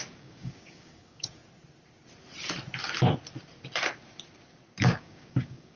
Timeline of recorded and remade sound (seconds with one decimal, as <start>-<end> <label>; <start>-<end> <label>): 0.0-1.4 remade; 1.4-4.8 recorded; 4.8-5.8 remade